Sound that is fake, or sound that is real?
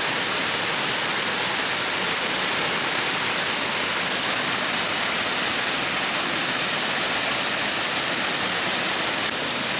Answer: real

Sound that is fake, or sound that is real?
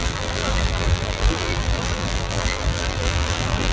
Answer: fake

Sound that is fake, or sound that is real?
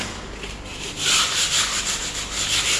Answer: real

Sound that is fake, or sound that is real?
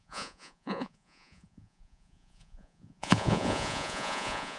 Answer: fake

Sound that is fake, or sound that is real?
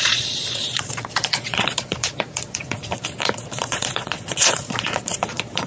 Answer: fake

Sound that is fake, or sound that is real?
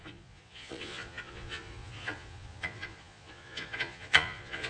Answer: fake